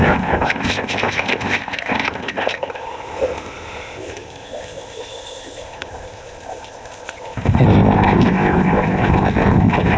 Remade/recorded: remade